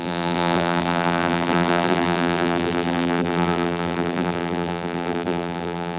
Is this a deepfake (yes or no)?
yes